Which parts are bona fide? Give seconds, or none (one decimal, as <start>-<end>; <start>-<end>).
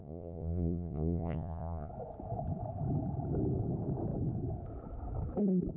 1.9-5.8